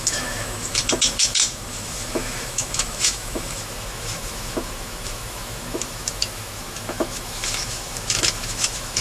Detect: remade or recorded remade